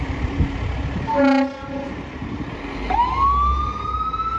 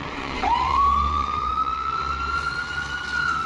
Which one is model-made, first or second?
second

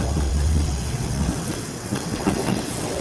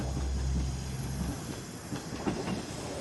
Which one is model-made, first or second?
first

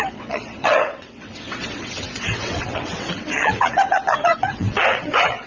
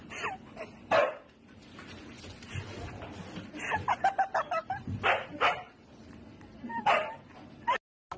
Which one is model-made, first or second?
first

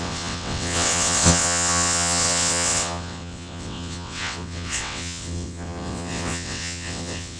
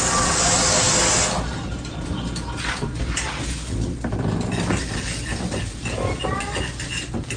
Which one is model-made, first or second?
first